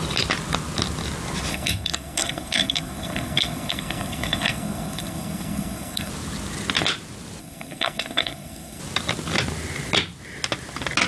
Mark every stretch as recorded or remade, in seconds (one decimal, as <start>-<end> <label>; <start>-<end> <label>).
0.0-1.5 recorded; 1.5-6.1 remade; 6.1-7.4 recorded; 7.4-8.8 remade; 8.8-11.1 recorded